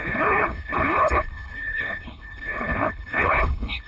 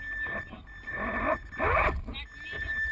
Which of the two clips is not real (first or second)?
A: first